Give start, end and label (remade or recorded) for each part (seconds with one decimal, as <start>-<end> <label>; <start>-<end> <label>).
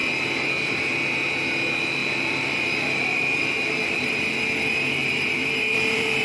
0.0-2.0 recorded; 2.0-4.1 remade; 4.1-5.0 recorded; 5.0-6.2 remade